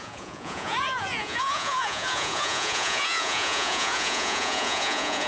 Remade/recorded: remade